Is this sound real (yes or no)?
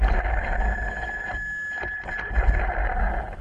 yes